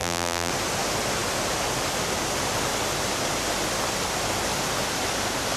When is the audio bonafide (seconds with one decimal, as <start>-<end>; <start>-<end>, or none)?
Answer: 0.5-5.6